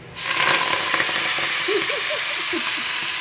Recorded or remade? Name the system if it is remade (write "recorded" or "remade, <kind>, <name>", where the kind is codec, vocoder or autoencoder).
recorded